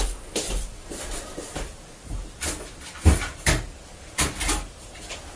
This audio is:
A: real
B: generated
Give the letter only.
A